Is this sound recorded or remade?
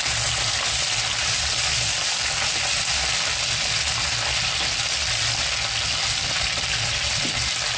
recorded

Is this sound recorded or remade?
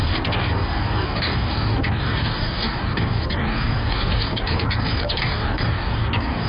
remade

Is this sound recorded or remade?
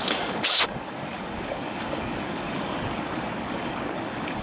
remade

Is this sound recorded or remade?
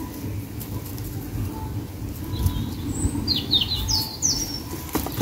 recorded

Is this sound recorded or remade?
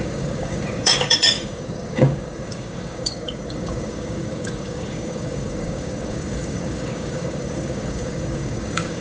remade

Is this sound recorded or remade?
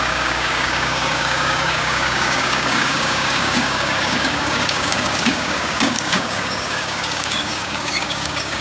remade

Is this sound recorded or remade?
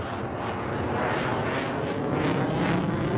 recorded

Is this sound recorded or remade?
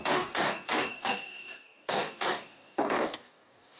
remade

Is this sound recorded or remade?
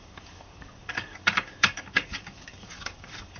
remade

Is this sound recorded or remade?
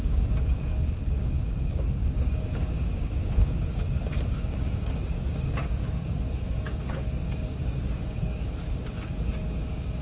remade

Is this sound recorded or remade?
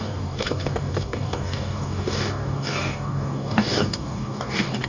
remade